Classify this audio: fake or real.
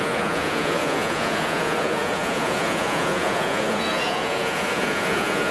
fake